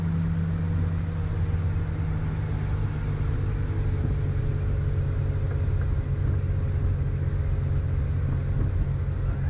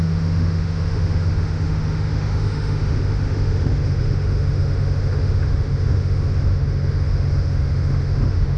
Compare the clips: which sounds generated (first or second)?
second